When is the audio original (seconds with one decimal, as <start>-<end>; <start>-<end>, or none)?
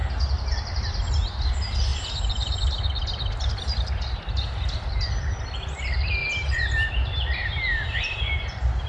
0.0-1.9; 2.6-6.2